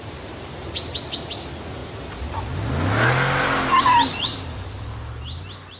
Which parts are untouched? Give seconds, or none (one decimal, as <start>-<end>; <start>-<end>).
0.0-5.8